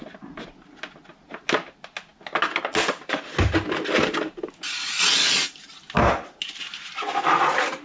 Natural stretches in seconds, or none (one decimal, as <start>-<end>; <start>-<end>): 0.0-7.8